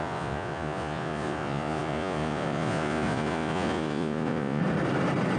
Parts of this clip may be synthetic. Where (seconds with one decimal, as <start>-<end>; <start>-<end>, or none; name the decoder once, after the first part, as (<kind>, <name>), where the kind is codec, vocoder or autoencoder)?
0.0-4.6 (vocoder, Vocos)